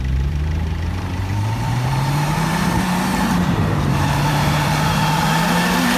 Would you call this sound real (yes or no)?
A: no